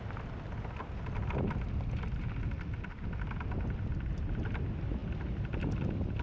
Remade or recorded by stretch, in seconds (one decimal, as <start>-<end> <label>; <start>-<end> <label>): 0.0-6.2 recorded